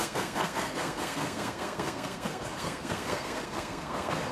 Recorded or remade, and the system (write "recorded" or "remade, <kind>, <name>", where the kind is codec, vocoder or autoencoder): remade, codec, SNAC